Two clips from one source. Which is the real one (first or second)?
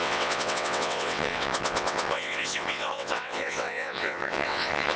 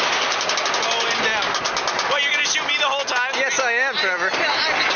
second